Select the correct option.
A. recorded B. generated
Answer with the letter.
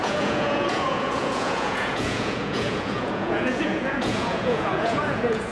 B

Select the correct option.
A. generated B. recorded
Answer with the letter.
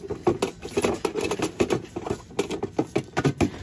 B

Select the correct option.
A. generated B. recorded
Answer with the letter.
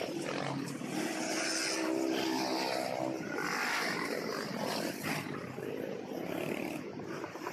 B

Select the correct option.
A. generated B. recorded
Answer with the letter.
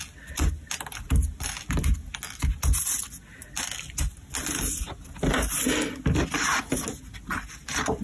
B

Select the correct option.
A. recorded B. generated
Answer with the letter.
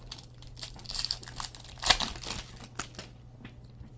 A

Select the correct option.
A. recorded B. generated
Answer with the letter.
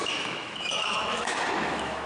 B